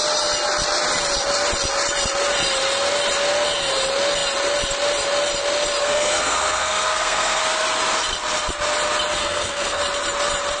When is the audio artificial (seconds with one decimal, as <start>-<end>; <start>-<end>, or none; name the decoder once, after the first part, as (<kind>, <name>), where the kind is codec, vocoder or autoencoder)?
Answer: 5.8-7.4 (codec, SNAC); 9.2-9.8